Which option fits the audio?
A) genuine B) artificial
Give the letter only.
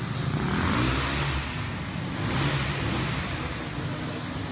A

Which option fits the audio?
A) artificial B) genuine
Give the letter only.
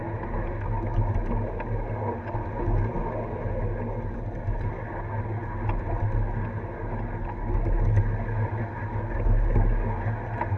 B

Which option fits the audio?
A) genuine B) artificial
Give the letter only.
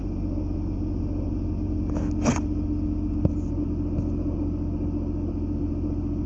A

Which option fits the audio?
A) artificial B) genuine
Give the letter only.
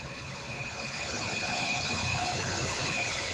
A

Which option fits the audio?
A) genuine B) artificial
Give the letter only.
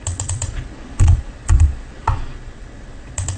B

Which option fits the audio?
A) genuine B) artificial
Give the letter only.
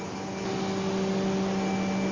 A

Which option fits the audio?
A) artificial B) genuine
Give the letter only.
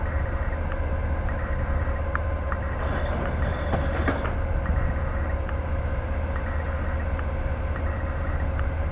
B